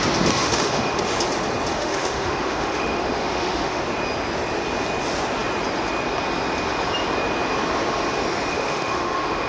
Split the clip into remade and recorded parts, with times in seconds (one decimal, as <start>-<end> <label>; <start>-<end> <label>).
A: 0.0-0.4 recorded; 0.4-1.0 remade; 1.0-1.7 recorded; 1.7-3.8 remade; 3.8-8.5 recorded; 8.5-9.5 remade

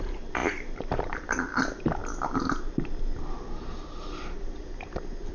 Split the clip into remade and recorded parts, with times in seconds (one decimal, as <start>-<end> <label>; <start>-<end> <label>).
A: 0.0-2.0 remade; 2.0-5.3 recorded

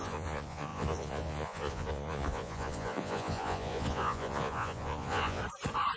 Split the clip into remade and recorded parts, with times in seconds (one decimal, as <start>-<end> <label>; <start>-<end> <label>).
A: 0.0-5.4 remade; 5.4-6.0 recorded

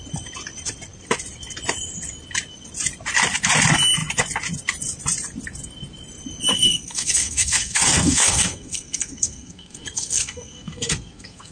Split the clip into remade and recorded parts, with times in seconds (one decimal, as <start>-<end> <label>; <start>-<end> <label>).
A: 0.0-6.5 recorded; 6.5-11.5 remade

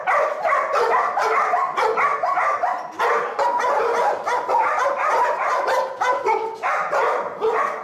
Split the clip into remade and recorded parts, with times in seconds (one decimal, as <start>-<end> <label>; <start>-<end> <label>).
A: 0.0-4.6 recorded; 4.6-5.5 remade; 5.5-7.8 recorded